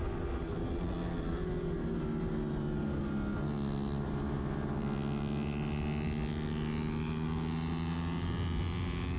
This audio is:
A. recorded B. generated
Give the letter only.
A